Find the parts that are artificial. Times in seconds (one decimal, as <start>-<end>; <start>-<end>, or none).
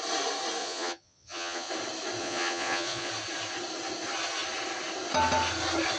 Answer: 0.6-1.7; 2.2-3.1